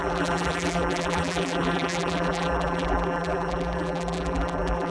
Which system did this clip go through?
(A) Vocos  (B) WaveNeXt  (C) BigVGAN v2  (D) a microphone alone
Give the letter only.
C